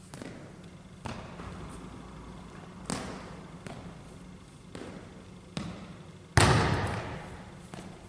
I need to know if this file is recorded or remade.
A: recorded